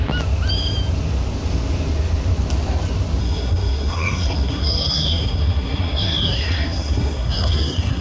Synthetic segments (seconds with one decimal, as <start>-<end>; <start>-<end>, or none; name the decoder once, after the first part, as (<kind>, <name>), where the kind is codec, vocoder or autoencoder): 3.2-8.0 (codec, SNAC)